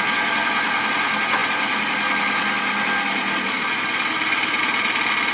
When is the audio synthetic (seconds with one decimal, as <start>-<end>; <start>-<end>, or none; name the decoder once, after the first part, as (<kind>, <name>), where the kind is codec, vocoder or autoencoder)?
none